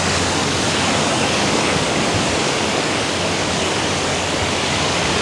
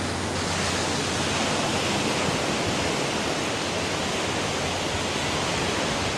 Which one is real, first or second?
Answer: second